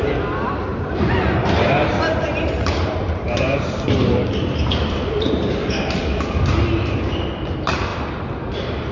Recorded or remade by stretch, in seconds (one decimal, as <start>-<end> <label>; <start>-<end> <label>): 0.0-0.7 recorded; 0.7-5.7 remade; 5.7-8.9 recorded